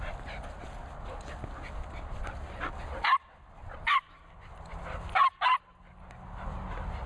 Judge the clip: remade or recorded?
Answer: recorded